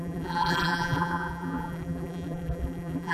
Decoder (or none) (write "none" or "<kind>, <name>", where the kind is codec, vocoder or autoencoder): vocoder, BigVGAN v2